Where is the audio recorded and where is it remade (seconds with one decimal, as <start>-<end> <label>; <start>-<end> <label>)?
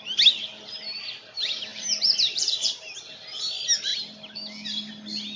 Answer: 0.0-1.7 recorded; 1.7-2.8 remade; 2.8-5.4 recorded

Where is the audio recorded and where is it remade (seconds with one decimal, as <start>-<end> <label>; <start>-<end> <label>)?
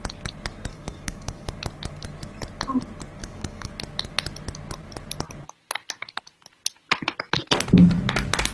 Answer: 0.0-0.7 recorded; 0.7-1.5 remade; 1.5-3.2 recorded; 3.2-3.7 remade; 3.7-8.5 recorded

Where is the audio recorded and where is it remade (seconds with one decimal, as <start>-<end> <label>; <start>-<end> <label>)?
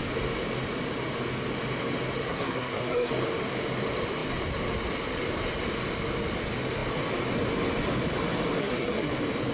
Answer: 0.0-2.2 recorded; 2.2-3.1 remade; 3.1-8.6 recorded; 8.6-9.1 remade; 9.1-9.5 recorded